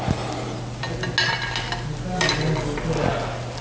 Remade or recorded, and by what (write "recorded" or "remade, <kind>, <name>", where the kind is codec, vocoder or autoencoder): recorded